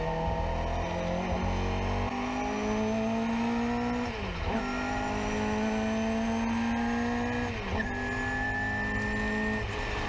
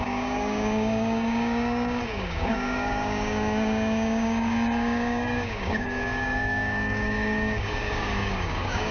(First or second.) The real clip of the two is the first